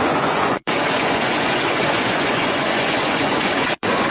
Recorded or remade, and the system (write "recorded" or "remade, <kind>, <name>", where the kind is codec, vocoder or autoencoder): remade, vocoder, Vocos